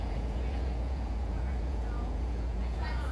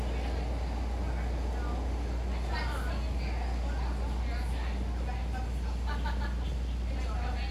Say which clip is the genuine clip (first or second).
second